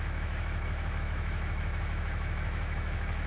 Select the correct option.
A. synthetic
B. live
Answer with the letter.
A